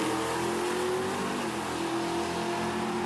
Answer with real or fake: real